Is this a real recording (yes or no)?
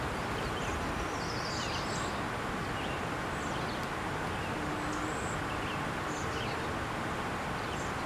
yes